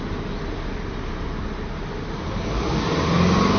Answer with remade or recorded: recorded